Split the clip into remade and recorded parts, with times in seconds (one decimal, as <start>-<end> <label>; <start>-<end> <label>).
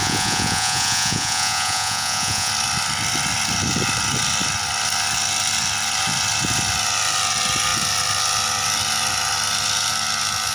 0.0-2.5 remade; 2.5-10.5 recorded